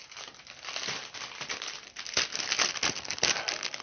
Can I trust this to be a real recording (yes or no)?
yes